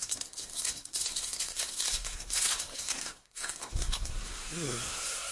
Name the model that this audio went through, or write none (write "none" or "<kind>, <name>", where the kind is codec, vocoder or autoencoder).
codec, SNAC